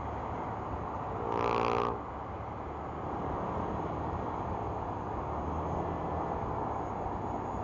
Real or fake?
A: real